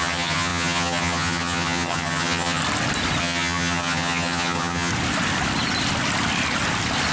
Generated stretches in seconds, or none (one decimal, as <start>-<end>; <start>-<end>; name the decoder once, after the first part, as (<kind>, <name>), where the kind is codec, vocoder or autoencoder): 0.0-2.6 (vocoder, HiFi-GAN); 3.2-4.9